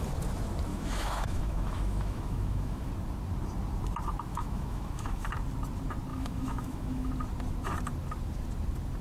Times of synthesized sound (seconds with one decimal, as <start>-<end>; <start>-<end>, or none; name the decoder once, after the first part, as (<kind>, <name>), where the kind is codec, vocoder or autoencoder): 0.7-2.9 (autoencoder, DAC-VAE); 4.3-5.3; 6.1-7.1